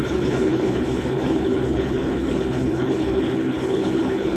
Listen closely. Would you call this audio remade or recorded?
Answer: remade